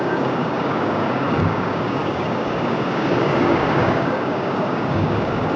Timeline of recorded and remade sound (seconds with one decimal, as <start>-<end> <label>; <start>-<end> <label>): 0.0-5.6 remade